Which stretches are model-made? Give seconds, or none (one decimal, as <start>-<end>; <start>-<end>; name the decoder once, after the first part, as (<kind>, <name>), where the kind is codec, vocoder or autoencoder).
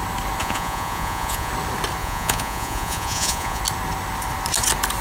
0.4-1.5 (vocoder, Vocos); 2.0-3.6